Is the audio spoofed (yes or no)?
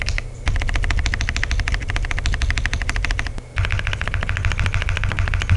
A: no